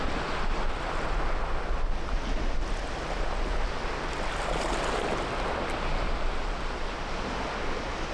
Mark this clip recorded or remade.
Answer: recorded